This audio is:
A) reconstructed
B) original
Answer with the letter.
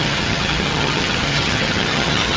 A